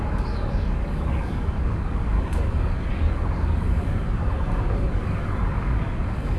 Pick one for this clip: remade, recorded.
remade